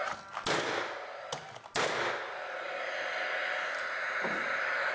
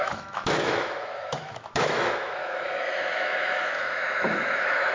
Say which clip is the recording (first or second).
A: first